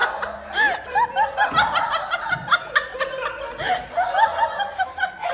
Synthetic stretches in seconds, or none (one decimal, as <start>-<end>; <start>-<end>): none